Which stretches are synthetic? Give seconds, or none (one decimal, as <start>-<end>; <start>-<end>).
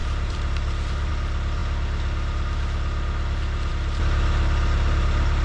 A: 0.0-1.1